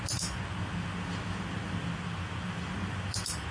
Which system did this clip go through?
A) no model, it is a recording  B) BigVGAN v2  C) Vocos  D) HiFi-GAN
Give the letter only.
A